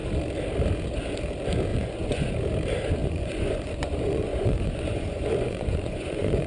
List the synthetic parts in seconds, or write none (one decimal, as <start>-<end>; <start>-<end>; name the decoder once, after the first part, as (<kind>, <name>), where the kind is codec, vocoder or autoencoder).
1.7-2.3 (vocoder, Vocos); 3.0-6.5